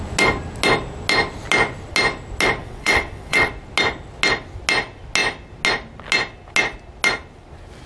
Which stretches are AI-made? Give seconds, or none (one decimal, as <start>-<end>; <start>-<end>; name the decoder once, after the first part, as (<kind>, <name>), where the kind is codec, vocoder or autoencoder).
2.6-3.5 (vocoder, WaveNeXt)